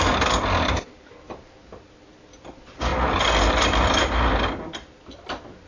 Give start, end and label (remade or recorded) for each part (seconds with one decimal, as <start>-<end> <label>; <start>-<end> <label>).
0.0-5.7 recorded

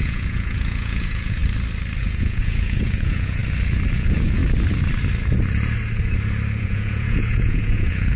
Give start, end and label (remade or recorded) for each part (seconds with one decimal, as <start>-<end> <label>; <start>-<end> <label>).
0.0-1.4 remade; 1.4-2.0 recorded; 2.0-3.4 remade; 3.4-3.9 recorded; 3.9-4.4 remade; 4.4-6.6 recorded; 6.6-8.2 remade

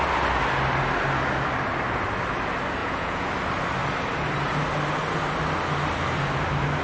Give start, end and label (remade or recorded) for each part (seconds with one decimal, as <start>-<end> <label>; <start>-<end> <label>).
0.0-2.8 recorded; 2.8-3.3 remade; 3.3-6.8 recorded